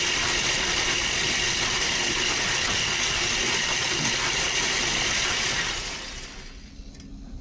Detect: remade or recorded recorded